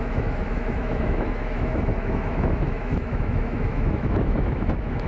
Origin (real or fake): fake